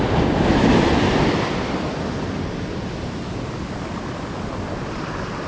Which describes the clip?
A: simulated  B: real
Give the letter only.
B